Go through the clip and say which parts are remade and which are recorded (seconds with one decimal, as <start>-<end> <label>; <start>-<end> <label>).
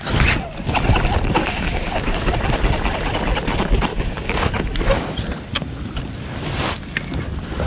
0.0-1.4 recorded; 1.4-2.3 remade; 2.3-3.9 recorded; 3.9-4.5 remade; 4.5-7.7 recorded